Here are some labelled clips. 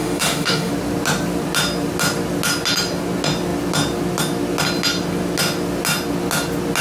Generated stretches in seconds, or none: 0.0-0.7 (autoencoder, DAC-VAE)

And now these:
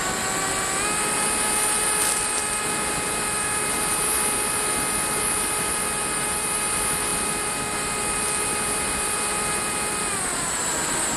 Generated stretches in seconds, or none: none